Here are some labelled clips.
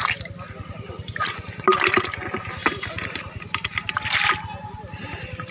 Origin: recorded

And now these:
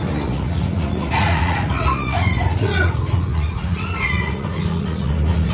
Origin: remade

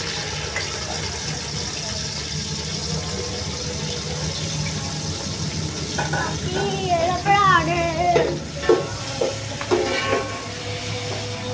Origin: recorded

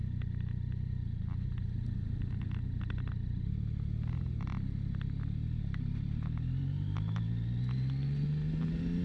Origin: recorded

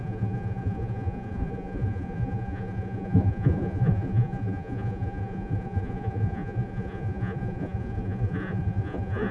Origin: remade